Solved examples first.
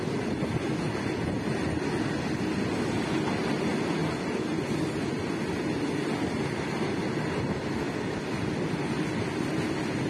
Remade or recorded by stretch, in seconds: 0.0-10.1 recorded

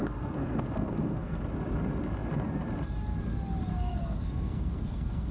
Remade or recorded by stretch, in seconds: 0.0-1.4 remade; 1.4-3.7 recorded; 3.7-5.3 remade

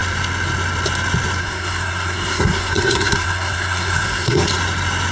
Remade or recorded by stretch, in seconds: 0.0-1.4 recorded; 1.4-4.5 remade; 4.5-5.1 recorded

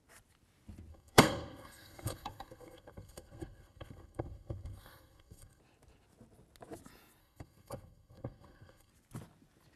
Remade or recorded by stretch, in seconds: 0.0-0.9 recorded; 0.9-5.6 remade; 5.6-7.2 recorded; 7.2-8.9 remade; 8.9-9.8 recorded